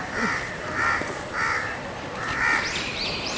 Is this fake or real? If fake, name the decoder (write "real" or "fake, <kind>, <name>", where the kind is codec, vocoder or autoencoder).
fake, vocoder, BigVGAN v2